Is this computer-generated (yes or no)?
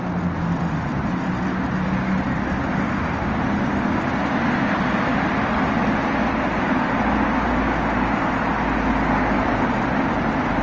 no